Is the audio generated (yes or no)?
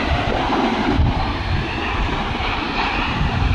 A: yes